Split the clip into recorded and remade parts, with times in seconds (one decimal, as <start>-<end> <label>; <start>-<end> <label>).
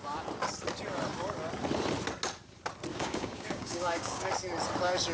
0.0-2.9 recorded; 2.9-4.3 remade; 4.3-5.1 recorded